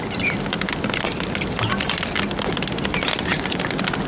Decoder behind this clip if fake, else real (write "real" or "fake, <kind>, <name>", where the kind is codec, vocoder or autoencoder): real